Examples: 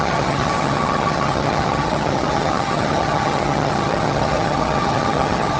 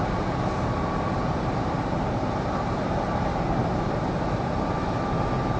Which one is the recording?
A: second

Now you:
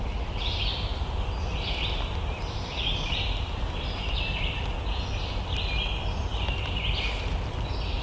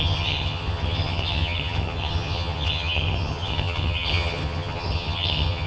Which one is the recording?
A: first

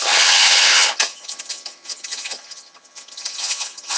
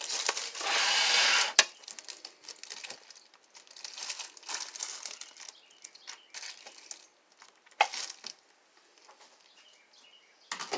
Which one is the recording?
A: second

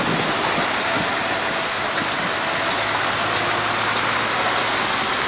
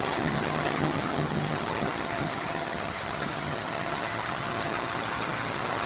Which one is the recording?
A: first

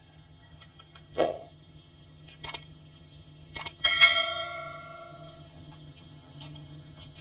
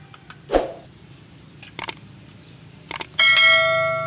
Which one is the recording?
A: second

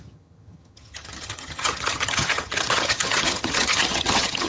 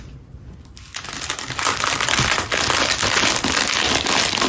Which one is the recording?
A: second